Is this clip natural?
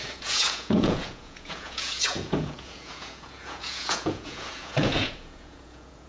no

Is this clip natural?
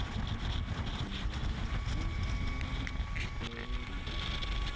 yes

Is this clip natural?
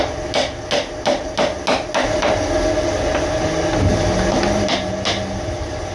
yes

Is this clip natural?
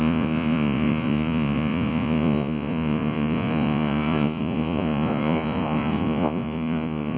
no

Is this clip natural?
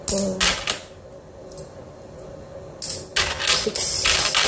yes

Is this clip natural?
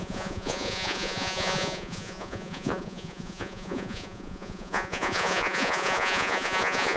no